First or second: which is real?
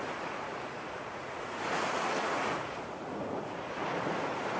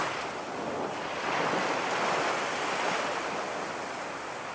second